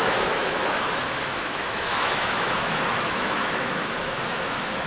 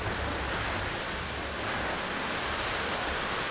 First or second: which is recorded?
second